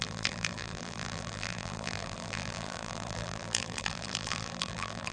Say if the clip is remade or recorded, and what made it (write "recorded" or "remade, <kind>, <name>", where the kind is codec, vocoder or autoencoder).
remade, vocoder, BigVGAN v2